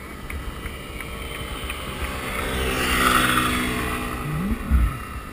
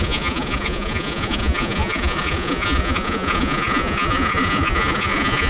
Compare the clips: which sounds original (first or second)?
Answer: first